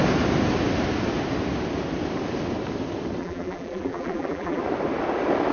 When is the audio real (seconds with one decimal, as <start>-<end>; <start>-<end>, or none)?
0.0-3.2; 4.6-5.5